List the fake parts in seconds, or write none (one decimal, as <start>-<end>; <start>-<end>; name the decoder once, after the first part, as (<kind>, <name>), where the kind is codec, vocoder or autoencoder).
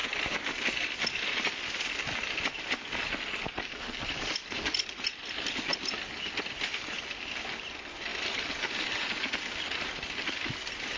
8.1-9.3 (vocoder, BigVGAN v2)